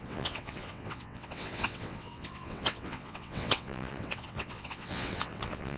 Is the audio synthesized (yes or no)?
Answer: yes